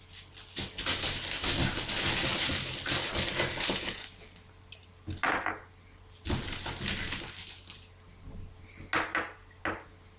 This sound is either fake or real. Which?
real